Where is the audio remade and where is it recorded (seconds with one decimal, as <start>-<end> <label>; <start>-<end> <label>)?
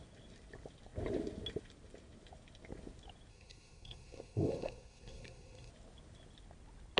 0.0-3.3 recorded; 3.3-5.7 remade; 5.7-7.0 recorded